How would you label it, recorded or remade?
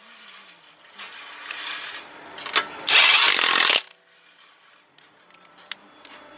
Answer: recorded